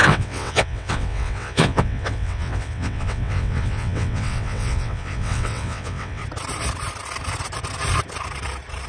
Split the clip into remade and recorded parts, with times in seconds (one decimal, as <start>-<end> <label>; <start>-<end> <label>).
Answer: 0.0-6.2 remade; 6.2-8.9 recorded